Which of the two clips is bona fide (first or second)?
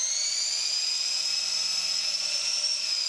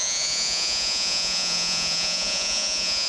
first